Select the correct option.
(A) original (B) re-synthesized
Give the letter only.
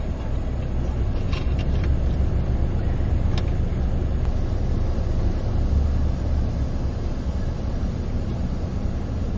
A